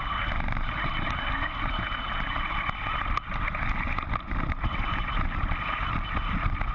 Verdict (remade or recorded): recorded